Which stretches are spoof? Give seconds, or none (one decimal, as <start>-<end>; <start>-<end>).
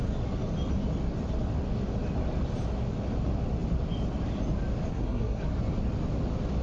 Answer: 4.9-5.4